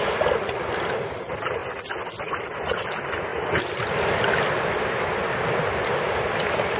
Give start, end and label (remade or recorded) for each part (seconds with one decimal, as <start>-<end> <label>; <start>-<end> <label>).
0.0-6.8 recorded